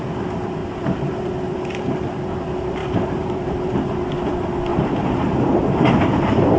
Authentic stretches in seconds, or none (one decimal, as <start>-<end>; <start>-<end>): 0.0-0.6; 1.1-2.8; 3.7-4.7; 5.4-6.6